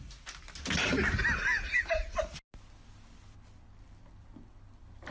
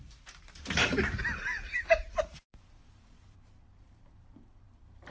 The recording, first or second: first